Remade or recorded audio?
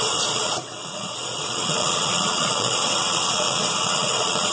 remade